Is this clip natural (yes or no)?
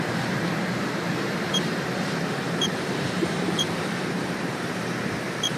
no